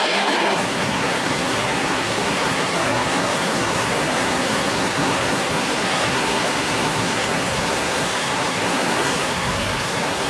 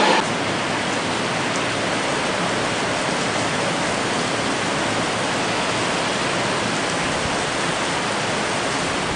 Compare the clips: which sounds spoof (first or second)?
first